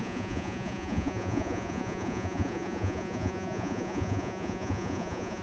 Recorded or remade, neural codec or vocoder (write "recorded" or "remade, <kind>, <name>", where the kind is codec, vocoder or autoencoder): remade, vocoder, Vocos